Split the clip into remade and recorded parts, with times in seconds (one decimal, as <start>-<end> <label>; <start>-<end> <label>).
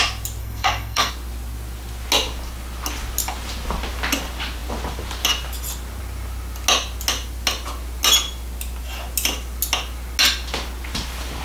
0.0-0.4 recorded; 0.4-1.1 remade; 1.1-11.4 recorded